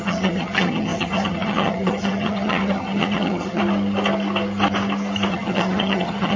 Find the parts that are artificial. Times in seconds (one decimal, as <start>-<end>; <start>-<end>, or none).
0.0-3.6; 5.3-6.4